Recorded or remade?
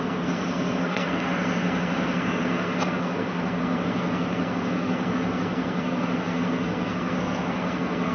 remade